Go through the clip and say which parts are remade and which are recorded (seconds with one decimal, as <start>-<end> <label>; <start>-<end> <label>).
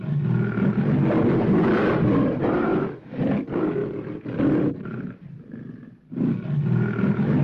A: 0.0-2.7 recorded; 2.7-3.3 remade; 3.3-7.4 recorded